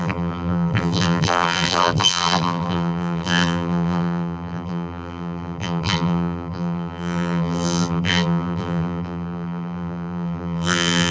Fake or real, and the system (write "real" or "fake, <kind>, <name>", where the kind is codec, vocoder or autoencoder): fake, vocoder, BigVGAN v2